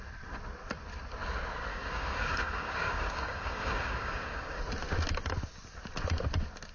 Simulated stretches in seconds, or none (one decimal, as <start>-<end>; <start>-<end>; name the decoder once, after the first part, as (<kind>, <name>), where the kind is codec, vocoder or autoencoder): 1.7-4.6 (codec, DAC)